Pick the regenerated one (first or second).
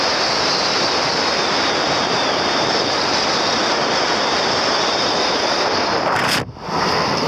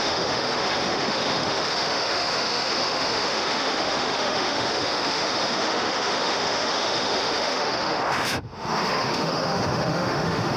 second